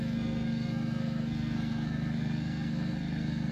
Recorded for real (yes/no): no